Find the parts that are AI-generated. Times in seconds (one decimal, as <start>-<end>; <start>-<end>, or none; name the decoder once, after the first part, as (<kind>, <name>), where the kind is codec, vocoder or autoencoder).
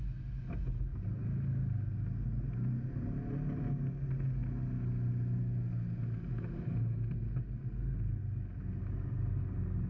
none